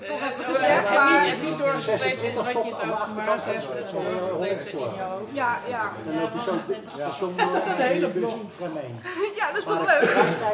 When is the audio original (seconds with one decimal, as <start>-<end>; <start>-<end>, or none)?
0.0-10.5